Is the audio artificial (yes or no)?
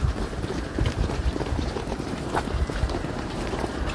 no